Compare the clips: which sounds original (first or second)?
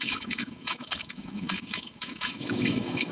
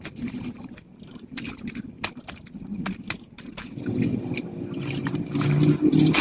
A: second